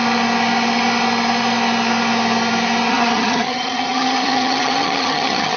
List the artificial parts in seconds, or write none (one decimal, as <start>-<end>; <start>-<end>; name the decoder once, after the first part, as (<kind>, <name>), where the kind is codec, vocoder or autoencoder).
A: 2.9-5.6 (vocoder, HiFi-GAN)